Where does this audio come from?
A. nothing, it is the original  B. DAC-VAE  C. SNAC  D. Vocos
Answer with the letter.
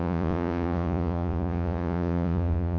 D